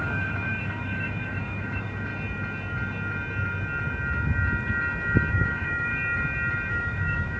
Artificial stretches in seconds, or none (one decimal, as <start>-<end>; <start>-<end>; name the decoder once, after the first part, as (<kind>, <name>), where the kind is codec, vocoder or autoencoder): 0.0-2.1 (autoencoder, DAC-VAE); 5.3-5.9; 6.7-7.4